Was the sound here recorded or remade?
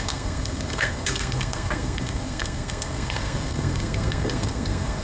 remade